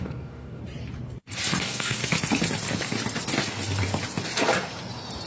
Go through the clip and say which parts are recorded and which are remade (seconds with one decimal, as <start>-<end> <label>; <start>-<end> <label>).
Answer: 0.0-0.6 remade; 0.6-1.6 recorded; 1.6-2.0 remade; 2.0-5.3 recorded